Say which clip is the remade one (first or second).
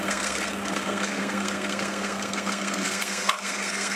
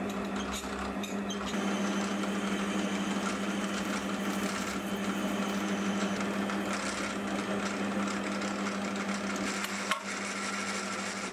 first